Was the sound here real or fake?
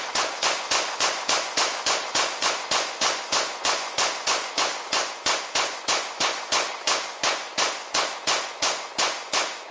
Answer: fake